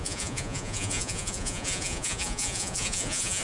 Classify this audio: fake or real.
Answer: fake